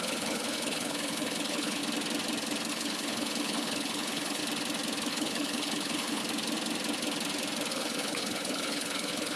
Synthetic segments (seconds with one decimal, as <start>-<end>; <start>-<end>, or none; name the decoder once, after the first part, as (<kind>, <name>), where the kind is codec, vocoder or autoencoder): 0.0-1.8 (codec, HILCodec); 2.7-4.4; 5.1-6.2; 7.7-9.4